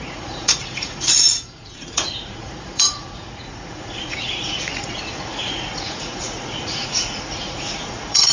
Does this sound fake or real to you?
fake